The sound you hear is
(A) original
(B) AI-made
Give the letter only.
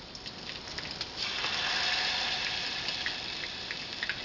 A